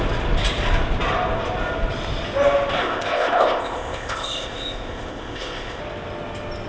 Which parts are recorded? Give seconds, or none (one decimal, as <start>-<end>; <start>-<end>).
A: 0.0-2.8; 5.8-6.7